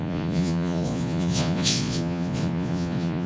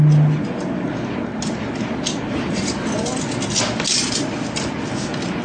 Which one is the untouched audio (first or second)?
second